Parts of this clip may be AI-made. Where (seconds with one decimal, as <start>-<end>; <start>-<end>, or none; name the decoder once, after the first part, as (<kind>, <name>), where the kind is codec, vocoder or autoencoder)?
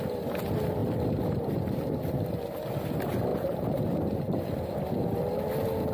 0.8-2.3 (vocoder, BigVGAN v2); 3.3-4.7